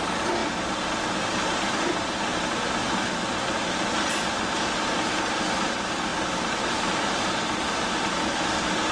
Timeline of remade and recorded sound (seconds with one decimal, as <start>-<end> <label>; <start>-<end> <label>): 0.0-8.9 recorded